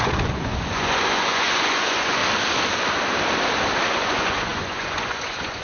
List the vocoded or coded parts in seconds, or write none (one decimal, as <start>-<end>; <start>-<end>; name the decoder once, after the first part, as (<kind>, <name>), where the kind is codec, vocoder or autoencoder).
0.0-2.2 (vocoder, Vocos); 3.9-5.6